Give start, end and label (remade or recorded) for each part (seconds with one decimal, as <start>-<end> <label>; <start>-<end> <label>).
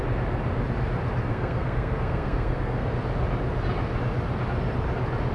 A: 0.0-1.3 recorded; 1.3-2.9 remade; 2.9-5.3 recorded